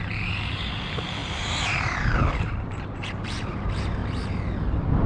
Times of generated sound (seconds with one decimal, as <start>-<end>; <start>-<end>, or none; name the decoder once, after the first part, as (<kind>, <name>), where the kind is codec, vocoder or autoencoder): 0.0-4.0 (vocoder, BigVGAN v2)